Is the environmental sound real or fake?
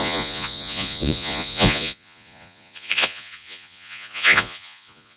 fake